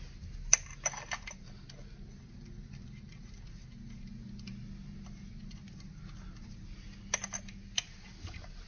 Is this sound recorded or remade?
recorded